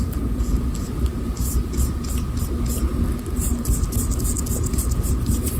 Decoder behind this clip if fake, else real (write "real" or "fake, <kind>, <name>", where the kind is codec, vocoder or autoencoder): real